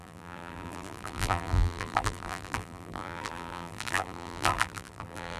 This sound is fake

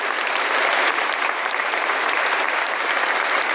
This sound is fake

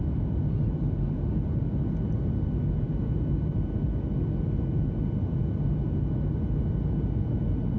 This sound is real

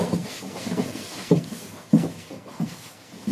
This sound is fake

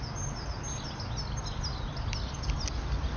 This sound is real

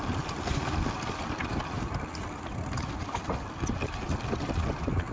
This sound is real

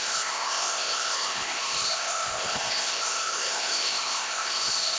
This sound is fake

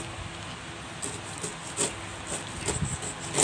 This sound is real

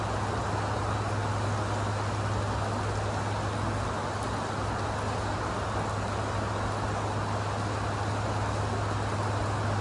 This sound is real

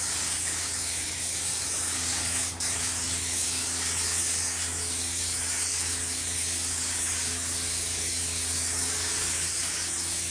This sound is fake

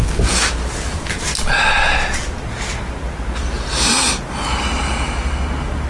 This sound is real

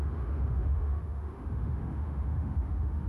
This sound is fake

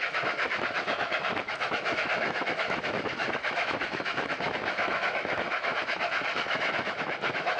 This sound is fake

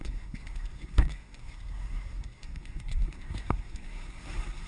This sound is fake